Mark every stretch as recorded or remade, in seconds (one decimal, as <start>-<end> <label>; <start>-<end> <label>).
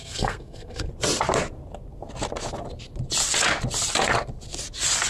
0.0-0.9 remade; 0.9-5.1 recorded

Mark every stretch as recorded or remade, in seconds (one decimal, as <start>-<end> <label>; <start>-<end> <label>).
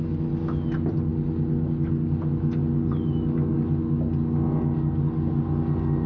0.0-6.1 recorded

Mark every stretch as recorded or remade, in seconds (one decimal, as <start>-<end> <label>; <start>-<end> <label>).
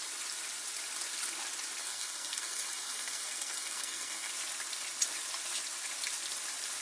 0.0-1.8 recorded; 1.8-4.3 remade; 4.3-6.8 recorded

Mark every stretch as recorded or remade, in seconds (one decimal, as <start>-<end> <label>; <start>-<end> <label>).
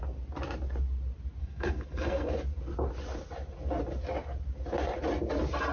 0.0-1.4 recorded; 1.4-2.3 remade; 2.3-5.7 recorded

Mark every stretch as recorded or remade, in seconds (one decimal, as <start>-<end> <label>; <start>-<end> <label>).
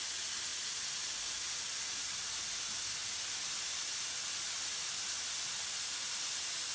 0.0-6.7 recorded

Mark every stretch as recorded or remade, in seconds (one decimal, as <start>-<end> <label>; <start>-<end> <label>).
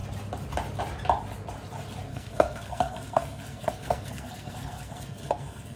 0.0-2.1 recorded; 2.1-5.8 remade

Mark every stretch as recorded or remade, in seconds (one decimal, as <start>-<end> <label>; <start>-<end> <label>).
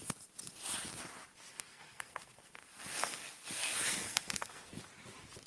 0.0-1.5 recorded; 1.5-4.8 remade; 4.8-5.5 recorded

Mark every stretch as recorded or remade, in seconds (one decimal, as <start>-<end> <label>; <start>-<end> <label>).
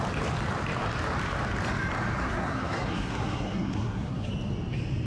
0.0-2.2 recorded; 2.2-4.3 remade; 4.3-5.1 recorded